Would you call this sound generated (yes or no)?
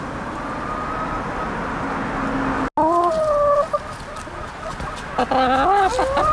no